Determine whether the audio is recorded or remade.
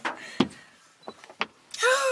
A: recorded